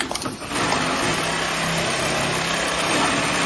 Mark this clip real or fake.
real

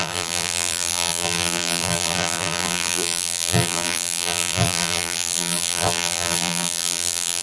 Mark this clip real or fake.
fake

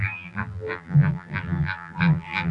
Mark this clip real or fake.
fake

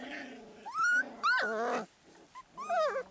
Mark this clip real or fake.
real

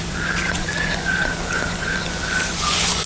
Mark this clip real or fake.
fake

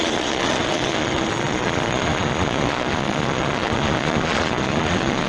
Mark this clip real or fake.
fake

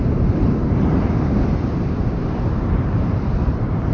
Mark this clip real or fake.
fake